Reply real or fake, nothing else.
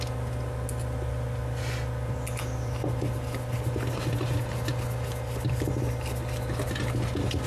real